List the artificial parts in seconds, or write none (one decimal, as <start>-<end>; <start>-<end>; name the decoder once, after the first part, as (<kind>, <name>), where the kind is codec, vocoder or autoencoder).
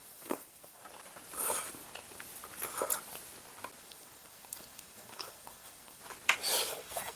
0.0-0.8 (codec, SNAC); 3.8-6.0; 6.7-7.2